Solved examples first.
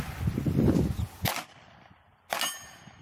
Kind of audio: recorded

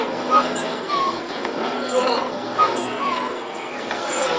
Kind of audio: remade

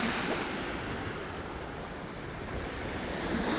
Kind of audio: recorded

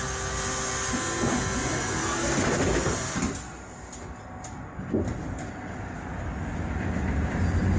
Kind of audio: recorded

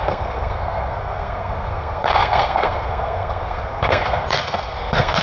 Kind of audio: remade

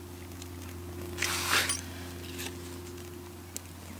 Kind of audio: recorded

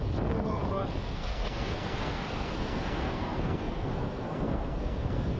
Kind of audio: remade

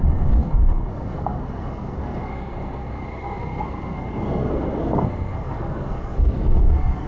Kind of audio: remade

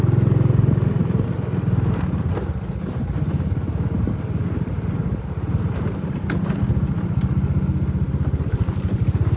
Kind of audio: recorded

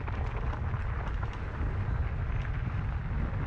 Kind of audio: recorded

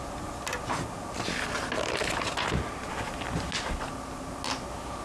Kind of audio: recorded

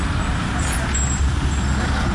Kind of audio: recorded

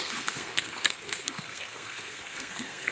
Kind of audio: remade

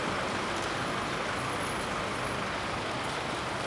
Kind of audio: recorded